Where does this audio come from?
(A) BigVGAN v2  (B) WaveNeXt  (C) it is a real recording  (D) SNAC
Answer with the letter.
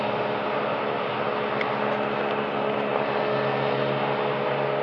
C